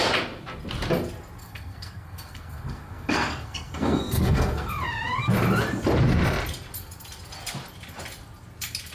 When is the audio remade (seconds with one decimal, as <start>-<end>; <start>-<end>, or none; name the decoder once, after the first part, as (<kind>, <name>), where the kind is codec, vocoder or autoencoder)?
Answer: 1.4-4.7 (codec, SNAC)